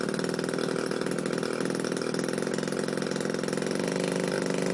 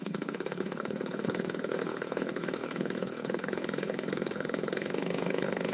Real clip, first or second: first